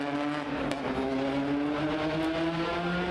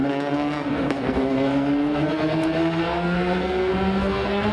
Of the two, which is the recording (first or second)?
first